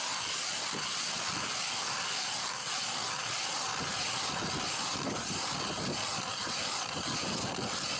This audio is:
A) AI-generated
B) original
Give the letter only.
B